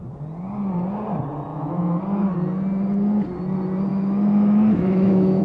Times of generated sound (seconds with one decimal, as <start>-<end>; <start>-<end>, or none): 1.5-2.0; 3.9-5.4